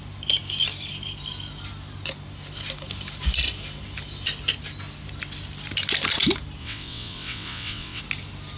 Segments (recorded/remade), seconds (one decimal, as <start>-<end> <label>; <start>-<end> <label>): 0.0-6.6 recorded; 6.6-8.0 remade; 8.0-8.6 recorded